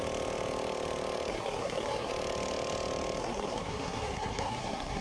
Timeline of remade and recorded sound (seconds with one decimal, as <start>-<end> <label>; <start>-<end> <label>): 0.0-1.3 recorded; 1.3-2.1 remade; 2.1-3.2 recorded; 3.2-5.0 remade